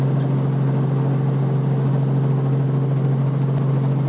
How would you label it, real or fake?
real